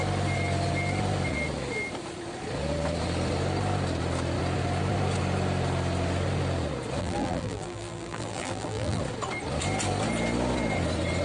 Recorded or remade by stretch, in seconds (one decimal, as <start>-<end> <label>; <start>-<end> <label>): 0.0-7.0 recorded; 7.0-9.0 remade; 9.0-11.2 recorded